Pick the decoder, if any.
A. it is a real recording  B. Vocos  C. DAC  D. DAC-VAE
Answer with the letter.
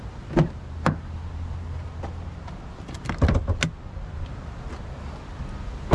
A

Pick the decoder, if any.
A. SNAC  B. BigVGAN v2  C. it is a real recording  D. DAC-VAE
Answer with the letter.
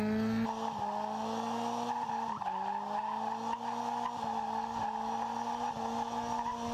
C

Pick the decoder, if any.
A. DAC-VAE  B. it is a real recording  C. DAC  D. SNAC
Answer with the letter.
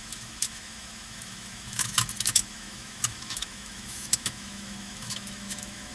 A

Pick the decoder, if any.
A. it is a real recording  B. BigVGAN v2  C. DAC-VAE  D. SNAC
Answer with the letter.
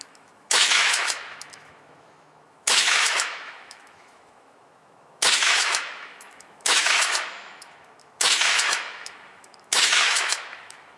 C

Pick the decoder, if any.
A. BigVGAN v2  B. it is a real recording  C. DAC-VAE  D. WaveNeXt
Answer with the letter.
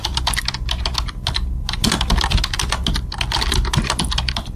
B